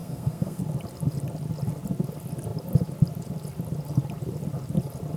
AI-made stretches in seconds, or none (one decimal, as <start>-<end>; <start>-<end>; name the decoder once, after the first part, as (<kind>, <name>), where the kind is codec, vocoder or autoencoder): 0.0-0.6 (codec, SNAC)